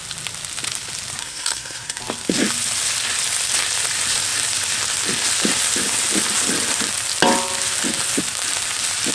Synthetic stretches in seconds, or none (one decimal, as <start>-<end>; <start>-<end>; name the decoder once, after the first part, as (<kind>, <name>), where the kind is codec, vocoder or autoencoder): 1.2-2.0 (codec, SNAC)